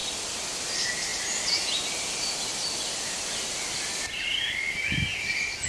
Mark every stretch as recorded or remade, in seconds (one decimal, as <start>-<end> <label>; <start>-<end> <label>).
0.0-5.7 recorded